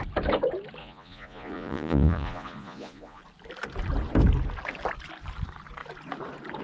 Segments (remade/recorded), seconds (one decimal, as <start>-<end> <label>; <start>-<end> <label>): 0.0-0.8 recorded; 0.8-3.2 remade; 3.2-6.6 recorded